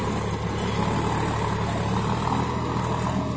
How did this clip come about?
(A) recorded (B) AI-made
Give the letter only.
A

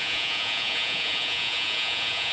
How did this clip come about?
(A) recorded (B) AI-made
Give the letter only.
B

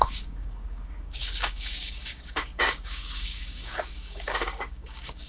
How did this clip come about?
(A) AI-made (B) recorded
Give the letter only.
A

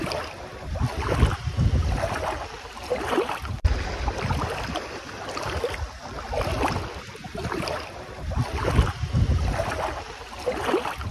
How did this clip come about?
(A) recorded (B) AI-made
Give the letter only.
A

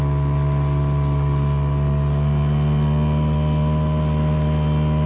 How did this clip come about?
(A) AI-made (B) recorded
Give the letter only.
B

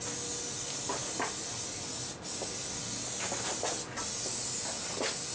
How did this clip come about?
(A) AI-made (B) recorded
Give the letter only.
B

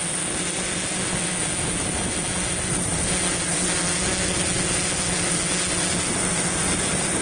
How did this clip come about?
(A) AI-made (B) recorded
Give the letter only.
B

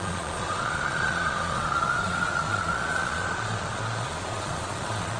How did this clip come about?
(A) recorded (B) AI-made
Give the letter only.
B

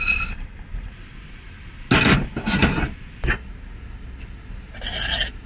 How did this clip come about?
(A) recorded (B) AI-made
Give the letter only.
A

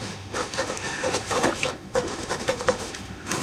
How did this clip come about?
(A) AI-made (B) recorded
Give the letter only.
A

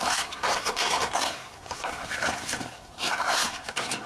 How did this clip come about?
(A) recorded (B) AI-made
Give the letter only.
B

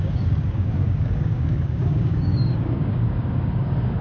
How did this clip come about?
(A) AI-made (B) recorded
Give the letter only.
A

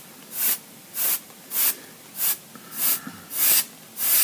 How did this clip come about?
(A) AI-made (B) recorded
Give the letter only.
B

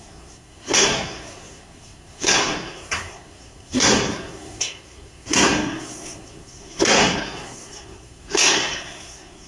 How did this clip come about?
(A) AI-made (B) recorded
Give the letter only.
A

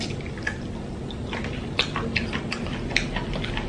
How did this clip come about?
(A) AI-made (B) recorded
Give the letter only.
B